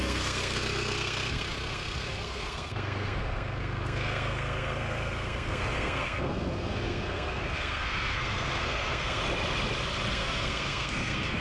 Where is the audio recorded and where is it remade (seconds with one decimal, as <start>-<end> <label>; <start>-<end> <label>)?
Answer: 0.0-9.2 remade; 9.2-10.1 recorded; 10.1-11.4 remade